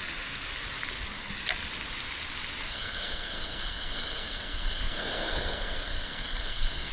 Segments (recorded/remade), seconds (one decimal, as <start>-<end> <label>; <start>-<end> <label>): 0.0-2.7 recorded; 2.7-6.9 remade